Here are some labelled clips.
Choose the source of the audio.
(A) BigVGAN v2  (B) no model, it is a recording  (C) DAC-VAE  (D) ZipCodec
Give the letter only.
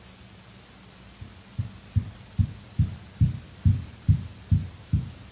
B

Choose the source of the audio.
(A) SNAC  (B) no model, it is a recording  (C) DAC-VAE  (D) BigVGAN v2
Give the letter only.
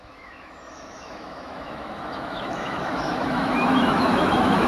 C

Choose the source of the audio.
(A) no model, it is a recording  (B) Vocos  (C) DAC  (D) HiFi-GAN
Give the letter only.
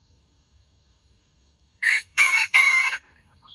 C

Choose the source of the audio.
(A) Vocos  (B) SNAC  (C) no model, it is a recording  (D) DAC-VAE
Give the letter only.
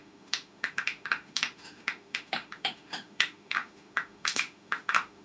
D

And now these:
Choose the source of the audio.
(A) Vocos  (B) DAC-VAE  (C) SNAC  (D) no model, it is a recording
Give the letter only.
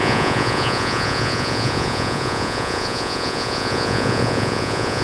A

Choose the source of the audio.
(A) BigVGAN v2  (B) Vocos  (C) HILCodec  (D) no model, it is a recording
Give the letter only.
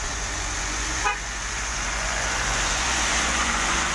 B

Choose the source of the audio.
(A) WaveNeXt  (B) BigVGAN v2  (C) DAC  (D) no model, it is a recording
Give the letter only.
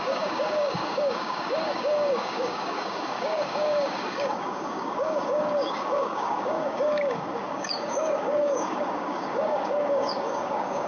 C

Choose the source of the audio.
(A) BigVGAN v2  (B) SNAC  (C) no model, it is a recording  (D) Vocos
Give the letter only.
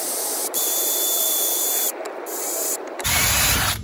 A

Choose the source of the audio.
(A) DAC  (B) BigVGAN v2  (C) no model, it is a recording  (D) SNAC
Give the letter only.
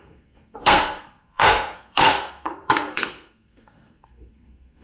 D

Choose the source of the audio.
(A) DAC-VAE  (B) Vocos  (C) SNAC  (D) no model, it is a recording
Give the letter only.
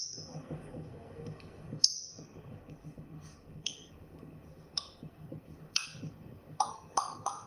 C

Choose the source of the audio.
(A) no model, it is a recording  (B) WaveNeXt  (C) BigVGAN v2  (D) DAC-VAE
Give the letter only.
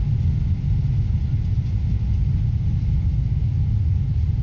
A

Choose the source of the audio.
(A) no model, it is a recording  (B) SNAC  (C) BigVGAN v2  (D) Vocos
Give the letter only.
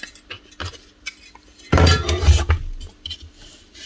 A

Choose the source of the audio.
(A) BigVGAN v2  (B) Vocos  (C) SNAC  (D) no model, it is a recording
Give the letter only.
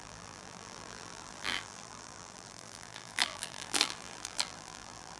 A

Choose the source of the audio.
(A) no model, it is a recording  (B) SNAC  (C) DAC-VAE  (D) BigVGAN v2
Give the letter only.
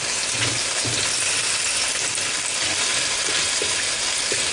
A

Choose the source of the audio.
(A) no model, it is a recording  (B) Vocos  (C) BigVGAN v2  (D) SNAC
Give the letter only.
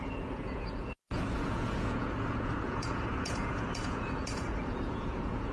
B